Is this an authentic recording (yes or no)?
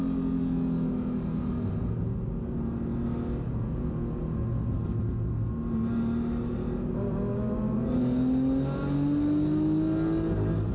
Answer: yes